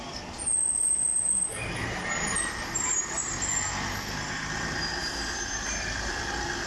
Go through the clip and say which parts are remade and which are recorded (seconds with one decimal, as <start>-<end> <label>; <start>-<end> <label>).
0.0-6.7 recorded